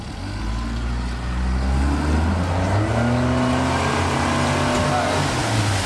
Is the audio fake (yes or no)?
no